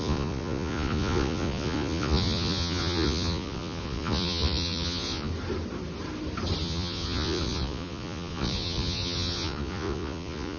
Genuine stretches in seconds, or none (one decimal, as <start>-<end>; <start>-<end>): 5.3-6.6